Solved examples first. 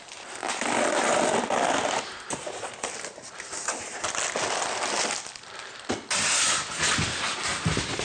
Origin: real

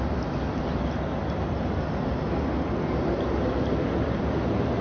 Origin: real